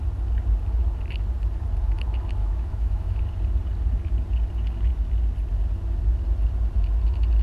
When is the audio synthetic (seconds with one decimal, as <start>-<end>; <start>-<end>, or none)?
2.4-3.2